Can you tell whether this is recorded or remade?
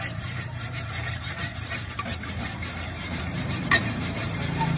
remade